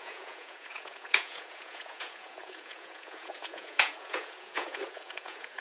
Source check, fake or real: fake